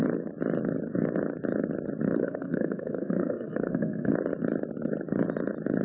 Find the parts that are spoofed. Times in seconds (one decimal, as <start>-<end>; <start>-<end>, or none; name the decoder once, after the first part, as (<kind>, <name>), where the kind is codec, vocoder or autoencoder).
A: 2.2-4.1 (codec, SNAC)